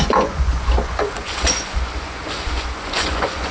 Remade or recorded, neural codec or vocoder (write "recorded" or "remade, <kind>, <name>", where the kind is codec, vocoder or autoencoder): remade, vocoder, Vocos